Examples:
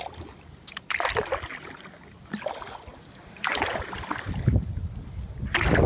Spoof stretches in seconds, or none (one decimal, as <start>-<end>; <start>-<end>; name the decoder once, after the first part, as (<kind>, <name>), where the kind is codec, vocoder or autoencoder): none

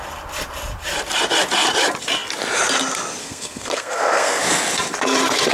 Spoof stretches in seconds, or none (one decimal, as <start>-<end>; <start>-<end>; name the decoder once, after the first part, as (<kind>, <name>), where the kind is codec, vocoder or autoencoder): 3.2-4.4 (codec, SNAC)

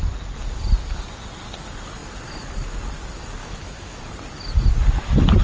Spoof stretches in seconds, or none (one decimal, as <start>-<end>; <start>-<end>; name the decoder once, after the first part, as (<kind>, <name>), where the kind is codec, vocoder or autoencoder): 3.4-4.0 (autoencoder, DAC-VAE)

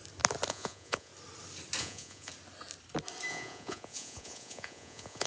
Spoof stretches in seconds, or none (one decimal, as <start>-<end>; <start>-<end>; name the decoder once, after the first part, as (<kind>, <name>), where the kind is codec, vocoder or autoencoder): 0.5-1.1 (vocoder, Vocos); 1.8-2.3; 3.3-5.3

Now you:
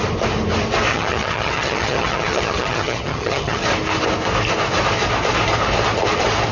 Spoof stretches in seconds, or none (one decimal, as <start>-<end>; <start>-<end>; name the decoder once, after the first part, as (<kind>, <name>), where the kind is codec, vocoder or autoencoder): 0.9-3.6 (vocoder, HiFi-GAN)

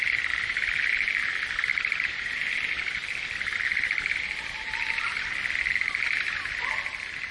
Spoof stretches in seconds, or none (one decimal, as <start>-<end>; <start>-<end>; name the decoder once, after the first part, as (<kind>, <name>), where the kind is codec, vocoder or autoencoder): 1.7-2.4 (vocoder, BigVGAN v2)

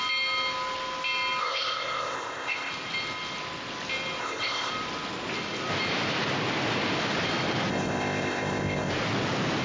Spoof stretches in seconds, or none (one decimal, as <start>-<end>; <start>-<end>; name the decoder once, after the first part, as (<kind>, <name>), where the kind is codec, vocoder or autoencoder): 1.4-2.7 (codec, ZipCodec); 4.2-4.7; 7.7-8.9